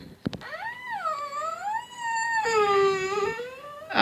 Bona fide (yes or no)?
yes